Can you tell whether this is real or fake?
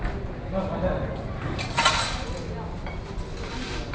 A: real